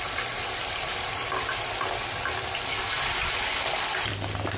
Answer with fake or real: real